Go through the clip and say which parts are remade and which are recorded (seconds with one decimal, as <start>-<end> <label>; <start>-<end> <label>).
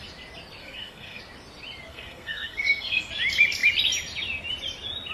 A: 0.0-0.6 recorded; 0.6-1.2 remade; 1.2-1.9 recorded; 1.9-3.1 remade; 3.1-5.1 recorded